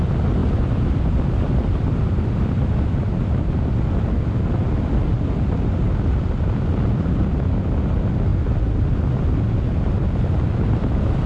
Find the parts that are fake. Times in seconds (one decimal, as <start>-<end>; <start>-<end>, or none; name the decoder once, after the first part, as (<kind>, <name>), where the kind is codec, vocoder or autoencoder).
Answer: 0.4-3.4 (vocoder, BigVGAN v2)